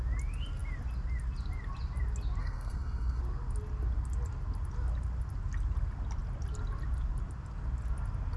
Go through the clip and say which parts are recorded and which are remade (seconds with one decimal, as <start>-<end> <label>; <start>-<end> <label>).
0.0-2.4 recorded; 2.4-3.2 remade; 3.2-8.4 recorded